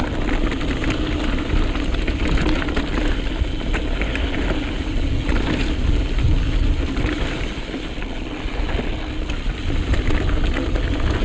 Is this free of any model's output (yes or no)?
yes